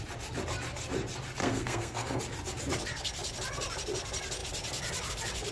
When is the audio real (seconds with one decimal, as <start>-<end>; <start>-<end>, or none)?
0.0-1.4; 2.2-5.5